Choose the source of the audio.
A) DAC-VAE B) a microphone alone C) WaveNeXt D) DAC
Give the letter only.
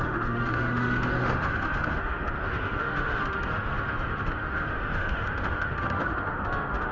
A